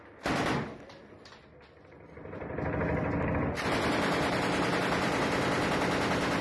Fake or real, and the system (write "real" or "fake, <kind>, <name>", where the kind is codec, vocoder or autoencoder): real